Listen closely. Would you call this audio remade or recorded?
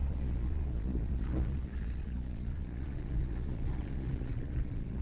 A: remade